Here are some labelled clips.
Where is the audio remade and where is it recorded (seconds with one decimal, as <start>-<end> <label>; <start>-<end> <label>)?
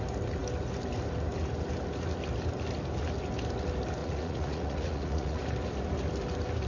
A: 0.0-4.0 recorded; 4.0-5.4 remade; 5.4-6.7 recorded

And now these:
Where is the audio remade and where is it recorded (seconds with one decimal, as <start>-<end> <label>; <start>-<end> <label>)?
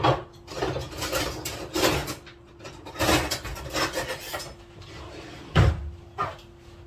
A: 0.0-6.9 recorded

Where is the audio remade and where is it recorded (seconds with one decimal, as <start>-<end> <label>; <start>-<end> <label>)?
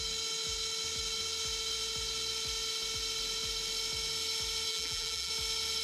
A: 0.0-4.7 recorded; 4.7-5.3 remade; 5.3-5.8 recorded